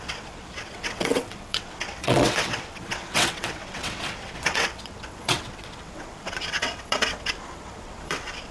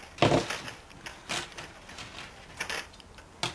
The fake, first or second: first